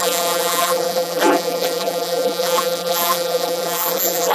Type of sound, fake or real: fake